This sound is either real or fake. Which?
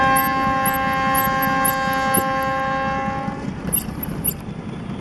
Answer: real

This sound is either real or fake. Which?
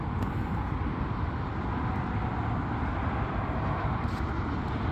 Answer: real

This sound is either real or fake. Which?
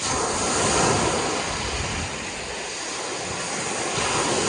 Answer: real